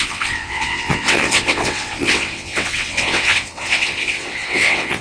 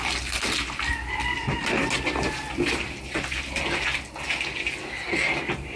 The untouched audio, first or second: second